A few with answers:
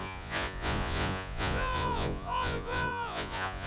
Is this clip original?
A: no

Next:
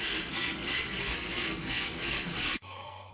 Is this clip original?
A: no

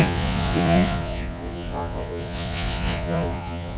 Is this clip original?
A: no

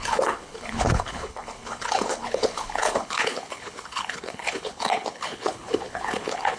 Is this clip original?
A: no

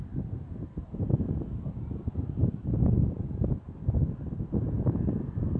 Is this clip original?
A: yes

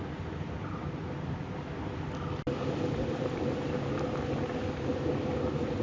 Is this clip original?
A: yes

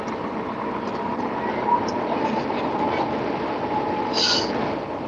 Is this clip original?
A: yes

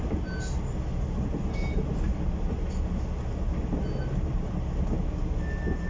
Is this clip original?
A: yes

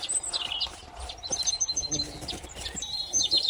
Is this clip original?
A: yes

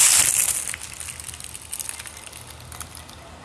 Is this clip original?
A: yes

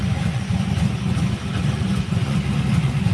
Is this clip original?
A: no